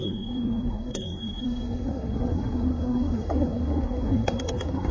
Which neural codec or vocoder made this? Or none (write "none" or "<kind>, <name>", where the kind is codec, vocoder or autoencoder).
codec, SNAC